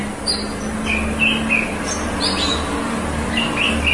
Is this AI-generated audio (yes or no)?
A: no